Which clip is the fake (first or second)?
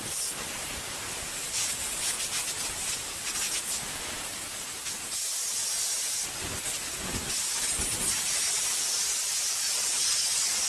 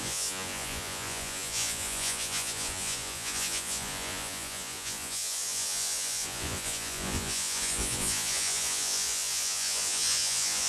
second